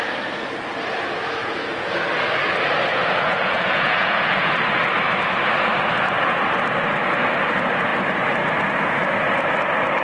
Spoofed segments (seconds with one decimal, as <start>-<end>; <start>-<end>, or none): 1.4-1.9; 2.9-4.5